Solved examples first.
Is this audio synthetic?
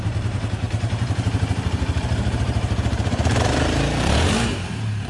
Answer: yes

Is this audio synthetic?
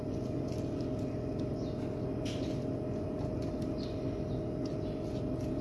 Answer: no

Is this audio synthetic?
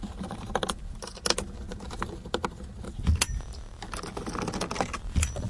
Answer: no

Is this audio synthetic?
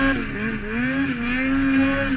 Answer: no